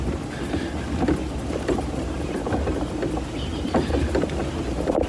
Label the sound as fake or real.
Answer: real